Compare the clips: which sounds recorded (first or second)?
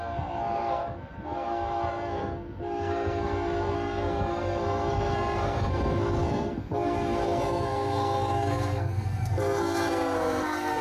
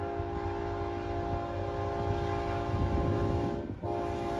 second